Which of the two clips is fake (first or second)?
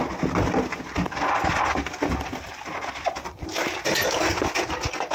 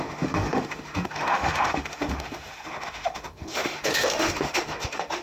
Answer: second